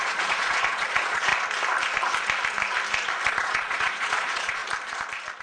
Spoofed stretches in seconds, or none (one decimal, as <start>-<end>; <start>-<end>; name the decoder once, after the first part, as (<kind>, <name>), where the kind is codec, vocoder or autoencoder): 0.0-1.3 (vocoder, Vocos); 3.3-4.6